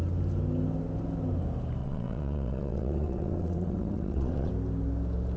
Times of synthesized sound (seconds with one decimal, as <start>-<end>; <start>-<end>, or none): 1.8-4.5

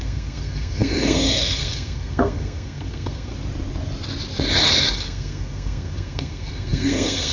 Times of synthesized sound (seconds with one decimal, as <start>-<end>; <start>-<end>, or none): 0.0-3.3; 4.9-7.3

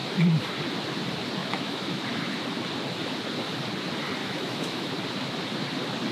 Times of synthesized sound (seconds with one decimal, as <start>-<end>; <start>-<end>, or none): 1.4-2.0; 4.2-4.9